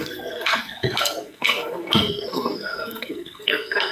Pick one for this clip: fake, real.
fake